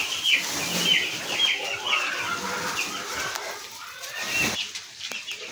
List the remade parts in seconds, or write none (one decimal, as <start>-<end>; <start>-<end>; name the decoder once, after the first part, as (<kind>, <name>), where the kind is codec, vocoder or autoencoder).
none